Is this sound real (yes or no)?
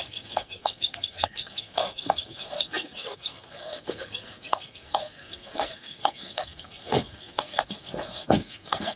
no